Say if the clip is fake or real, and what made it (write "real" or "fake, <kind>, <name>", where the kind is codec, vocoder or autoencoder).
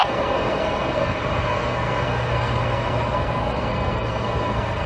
fake, codec, SNAC